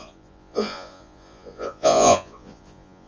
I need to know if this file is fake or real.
fake